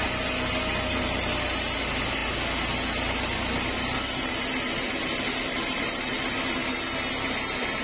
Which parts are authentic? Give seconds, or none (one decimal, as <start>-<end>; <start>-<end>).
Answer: 0.0-7.8